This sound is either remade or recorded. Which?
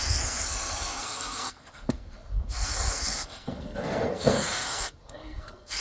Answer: remade